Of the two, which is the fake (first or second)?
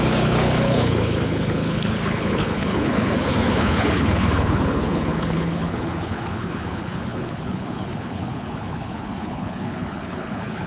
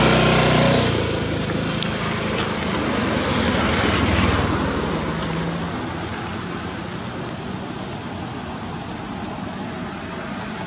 first